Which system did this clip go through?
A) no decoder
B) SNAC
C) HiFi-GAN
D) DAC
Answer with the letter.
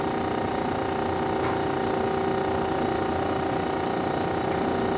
A